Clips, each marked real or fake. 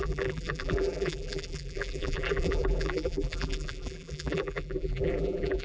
fake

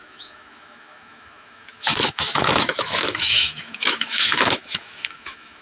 fake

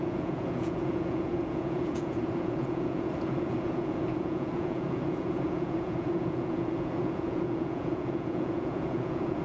fake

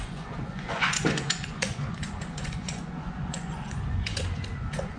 fake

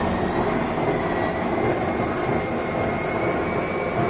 real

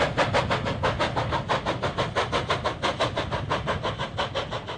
real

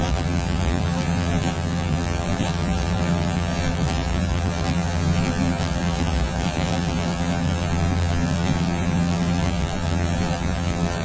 fake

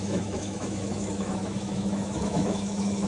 fake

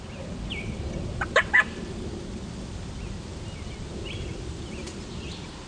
real